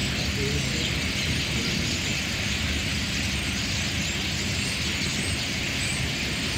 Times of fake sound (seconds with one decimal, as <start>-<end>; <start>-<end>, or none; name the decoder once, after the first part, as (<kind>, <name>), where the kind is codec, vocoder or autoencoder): 2.1-3.6 (vocoder, BigVGAN v2); 5.1-6.6